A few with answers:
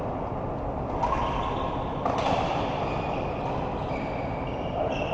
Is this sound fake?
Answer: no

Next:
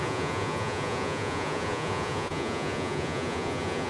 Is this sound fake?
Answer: yes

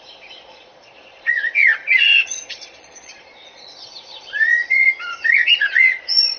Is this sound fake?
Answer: yes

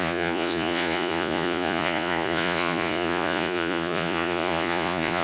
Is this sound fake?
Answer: yes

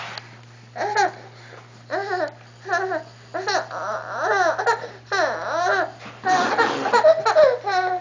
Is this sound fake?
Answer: no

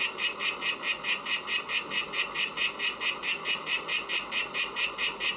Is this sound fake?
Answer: no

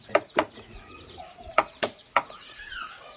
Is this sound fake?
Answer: yes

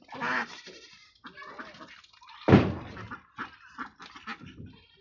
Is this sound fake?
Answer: no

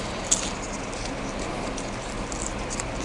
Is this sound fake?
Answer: no